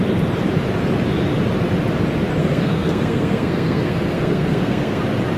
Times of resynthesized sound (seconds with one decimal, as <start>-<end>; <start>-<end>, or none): 2.4-5.0